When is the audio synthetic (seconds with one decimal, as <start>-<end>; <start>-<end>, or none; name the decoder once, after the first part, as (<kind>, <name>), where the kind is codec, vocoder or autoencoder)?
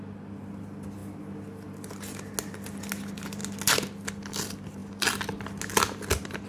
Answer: none